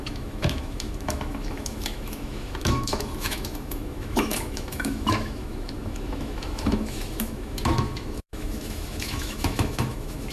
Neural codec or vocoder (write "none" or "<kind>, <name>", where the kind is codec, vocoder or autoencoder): autoencoder, DAC-VAE